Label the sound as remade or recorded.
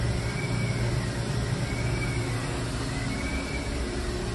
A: recorded